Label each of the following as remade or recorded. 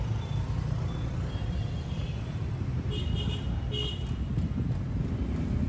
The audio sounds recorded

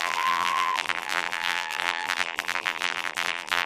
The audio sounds remade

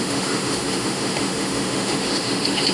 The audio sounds remade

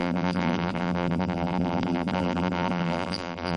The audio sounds remade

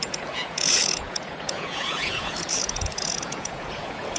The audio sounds remade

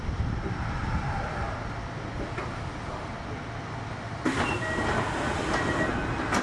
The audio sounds recorded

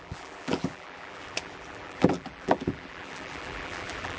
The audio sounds remade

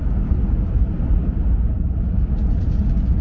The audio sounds recorded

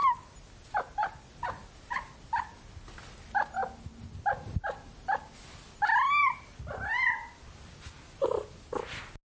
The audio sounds recorded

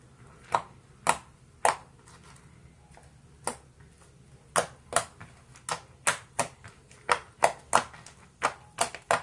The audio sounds recorded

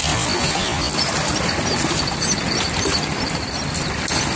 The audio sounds recorded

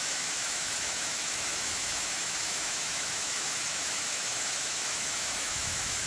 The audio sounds remade